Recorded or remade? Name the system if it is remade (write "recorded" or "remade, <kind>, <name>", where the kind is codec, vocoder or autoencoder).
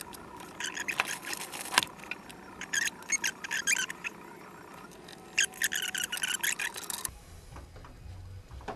recorded